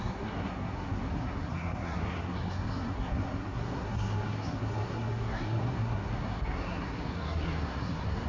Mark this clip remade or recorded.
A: remade